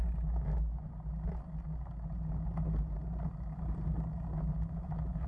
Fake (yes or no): no